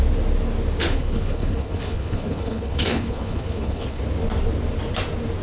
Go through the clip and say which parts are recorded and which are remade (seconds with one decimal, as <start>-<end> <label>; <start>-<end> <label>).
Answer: 0.0-0.8 recorded; 0.8-4.0 remade; 4.0-5.4 recorded